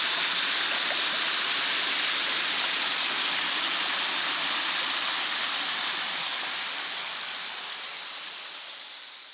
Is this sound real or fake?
real